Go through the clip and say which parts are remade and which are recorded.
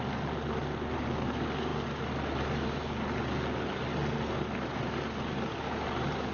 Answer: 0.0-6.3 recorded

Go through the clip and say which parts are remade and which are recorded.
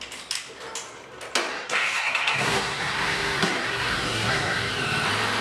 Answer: 0.0-1.5 recorded; 1.5-4.7 remade; 4.7-5.4 recorded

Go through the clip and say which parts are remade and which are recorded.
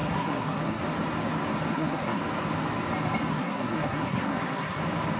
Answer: 0.0-0.8 remade; 0.8-1.7 recorded; 1.7-2.2 remade; 2.2-3.3 recorded; 3.3-4.8 remade; 4.8-5.2 recorded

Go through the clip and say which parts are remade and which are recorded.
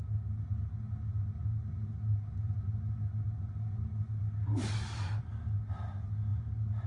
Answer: 0.0-6.9 recorded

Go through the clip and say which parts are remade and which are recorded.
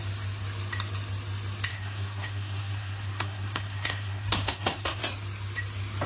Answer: 0.0-1.7 recorded; 1.7-5.0 remade; 5.0-6.1 recorded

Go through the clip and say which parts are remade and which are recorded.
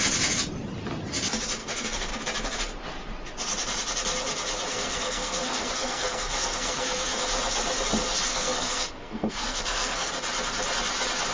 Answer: 0.0-1.6 recorded; 1.6-2.1 remade; 2.1-4.7 recorded; 4.7-7.2 remade; 7.2-8.3 recorded; 8.3-10.1 remade; 10.1-11.3 recorded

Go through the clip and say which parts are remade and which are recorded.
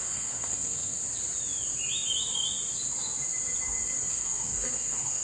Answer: 0.0-1.0 remade; 1.0-4.1 recorded; 4.1-5.2 remade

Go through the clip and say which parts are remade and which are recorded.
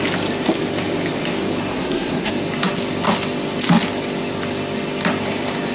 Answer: 0.0-1.7 recorded; 1.7-2.3 remade; 2.3-5.7 recorded